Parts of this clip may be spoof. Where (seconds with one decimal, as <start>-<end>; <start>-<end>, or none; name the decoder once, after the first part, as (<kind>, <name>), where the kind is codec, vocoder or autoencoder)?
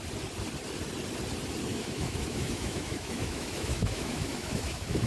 1.7-5.1 (autoencoder, DAC-VAE)